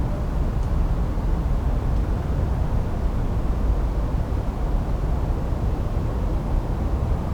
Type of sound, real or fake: real